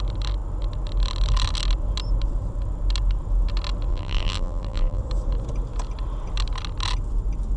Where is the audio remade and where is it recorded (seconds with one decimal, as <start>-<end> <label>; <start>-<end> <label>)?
0.0-3.9 recorded; 3.9-5.0 remade; 5.0-7.6 recorded